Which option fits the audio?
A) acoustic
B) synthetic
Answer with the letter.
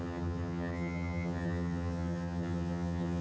B